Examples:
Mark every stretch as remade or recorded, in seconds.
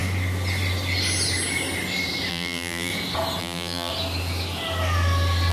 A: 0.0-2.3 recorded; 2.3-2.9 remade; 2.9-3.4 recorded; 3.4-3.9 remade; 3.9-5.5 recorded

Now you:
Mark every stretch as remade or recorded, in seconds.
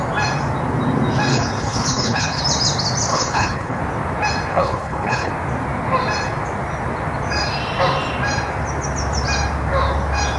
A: 0.0-1.3 recorded; 1.3-2.4 remade; 2.4-3.1 recorded; 3.1-3.8 remade; 3.8-4.5 recorded; 4.5-5.3 remade; 5.3-10.4 recorded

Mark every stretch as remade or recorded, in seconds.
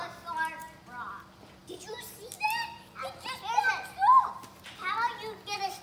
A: 0.0-5.8 recorded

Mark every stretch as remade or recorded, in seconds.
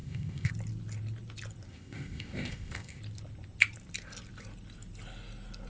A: 0.0-0.5 remade; 0.5-1.7 recorded; 1.7-3.0 remade; 3.0-5.7 recorded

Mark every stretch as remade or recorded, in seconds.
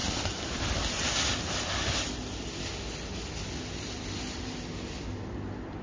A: 0.0-5.8 recorded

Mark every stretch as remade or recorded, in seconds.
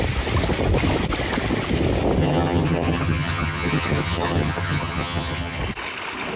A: 0.0-2.2 recorded; 2.2-5.6 remade; 5.6-6.4 recorded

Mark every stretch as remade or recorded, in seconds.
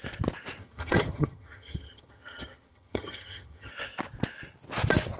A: 0.0-0.6 recorded; 0.6-3.7 remade; 3.7-5.2 recorded